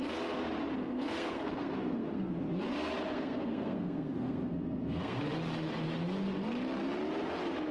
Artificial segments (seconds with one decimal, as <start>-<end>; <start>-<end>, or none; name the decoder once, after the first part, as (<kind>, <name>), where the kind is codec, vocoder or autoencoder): 0.8-2.3 (codec, SNAC); 3.1-5.2